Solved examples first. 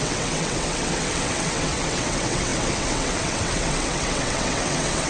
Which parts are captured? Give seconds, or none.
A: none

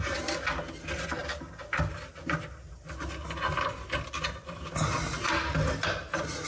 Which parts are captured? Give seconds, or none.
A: 0.0-6.5